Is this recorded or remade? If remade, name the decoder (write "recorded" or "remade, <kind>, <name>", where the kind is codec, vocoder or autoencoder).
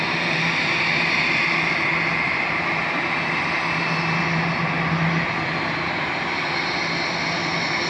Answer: recorded